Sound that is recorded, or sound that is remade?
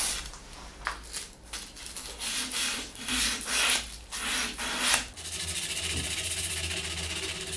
recorded